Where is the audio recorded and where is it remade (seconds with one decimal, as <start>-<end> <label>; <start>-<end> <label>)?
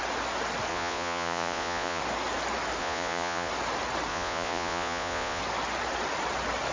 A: 0.0-0.7 recorded; 0.7-2.0 remade; 2.0-2.8 recorded; 2.8-3.5 remade; 3.5-4.1 recorded; 4.1-5.4 remade; 5.4-6.7 recorded